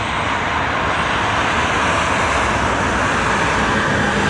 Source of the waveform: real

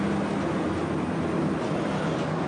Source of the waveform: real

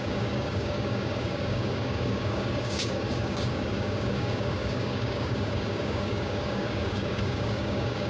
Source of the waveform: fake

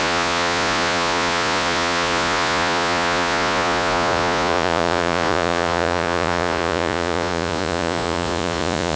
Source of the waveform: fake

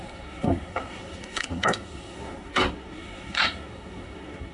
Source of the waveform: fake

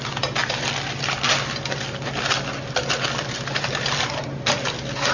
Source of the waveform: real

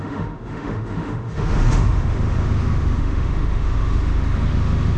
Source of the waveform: fake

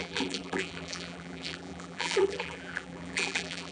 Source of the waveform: fake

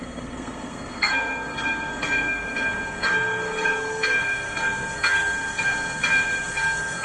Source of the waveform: fake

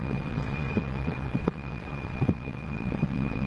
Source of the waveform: fake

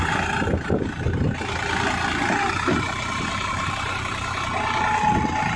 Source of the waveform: real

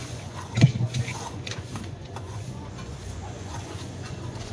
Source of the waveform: fake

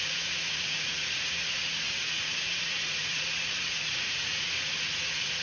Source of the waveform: fake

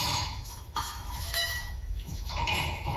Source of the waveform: fake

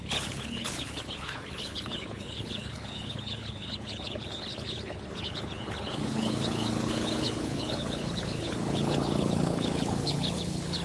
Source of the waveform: fake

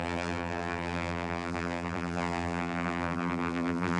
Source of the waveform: fake